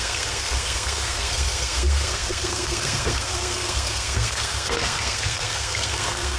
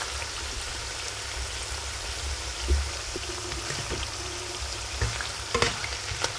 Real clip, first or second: second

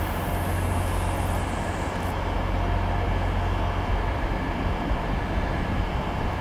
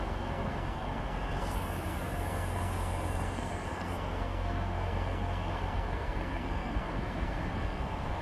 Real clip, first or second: first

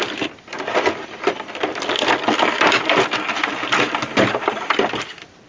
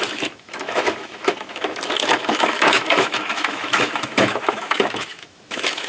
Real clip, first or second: first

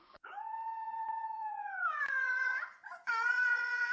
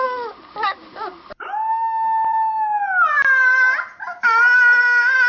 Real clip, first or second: second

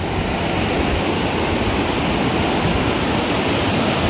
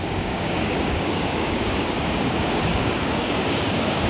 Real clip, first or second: first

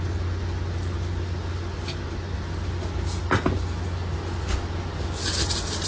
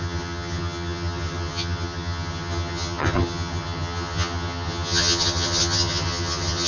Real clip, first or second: first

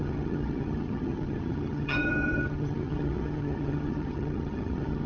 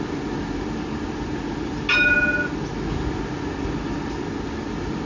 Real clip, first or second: second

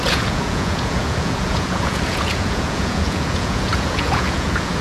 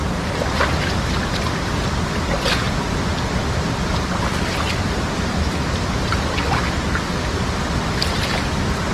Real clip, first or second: second